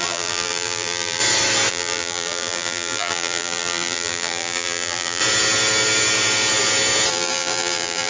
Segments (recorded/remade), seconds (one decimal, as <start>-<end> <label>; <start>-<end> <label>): 0.0-1.2 remade; 1.2-1.7 recorded; 1.7-5.2 remade; 5.2-7.1 recorded; 7.1-8.1 remade